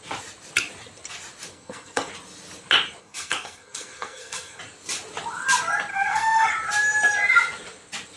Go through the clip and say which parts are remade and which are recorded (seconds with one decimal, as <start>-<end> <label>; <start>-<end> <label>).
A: 0.0-1.5 recorded; 1.5-2.1 remade; 2.1-3.0 recorded; 3.0-4.6 remade; 4.6-5.9 recorded; 5.9-6.5 remade; 6.5-8.2 recorded